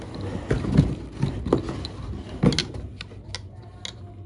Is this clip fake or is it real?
real